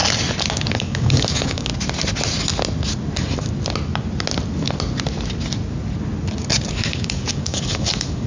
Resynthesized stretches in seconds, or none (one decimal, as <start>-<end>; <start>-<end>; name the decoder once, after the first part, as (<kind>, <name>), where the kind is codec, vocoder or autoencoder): 0.7-1.7 (codec, DAC); 6.7-8.3